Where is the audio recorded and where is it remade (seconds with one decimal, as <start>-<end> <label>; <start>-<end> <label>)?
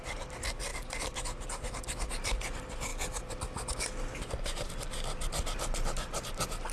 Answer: 0.0-6.7 recorded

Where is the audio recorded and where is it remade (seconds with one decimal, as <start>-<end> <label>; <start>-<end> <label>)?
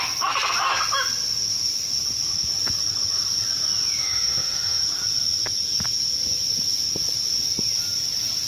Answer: 0.0-4.0 recorded; 4.0-4.8 remade; 4.8-8.5 recorded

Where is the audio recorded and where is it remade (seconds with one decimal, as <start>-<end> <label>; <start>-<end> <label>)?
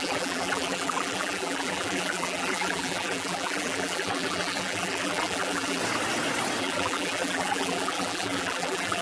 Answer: 0.0-5.8 remade; 5.8-6.6 recorded; 6.6-9.0 remade